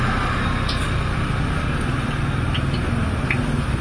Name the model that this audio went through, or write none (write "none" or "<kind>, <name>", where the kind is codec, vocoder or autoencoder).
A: none